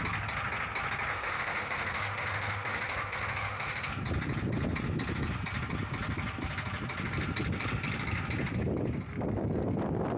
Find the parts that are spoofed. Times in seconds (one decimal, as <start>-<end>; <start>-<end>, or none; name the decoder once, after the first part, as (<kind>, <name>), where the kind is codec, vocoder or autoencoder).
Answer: 1.1-3.9 (autoencoder, DAC-VAE)